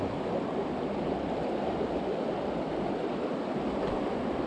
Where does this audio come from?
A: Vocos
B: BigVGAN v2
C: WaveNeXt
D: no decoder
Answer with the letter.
D